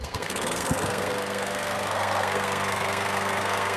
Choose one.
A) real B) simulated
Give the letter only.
B